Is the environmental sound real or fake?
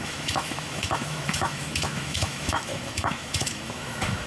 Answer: fake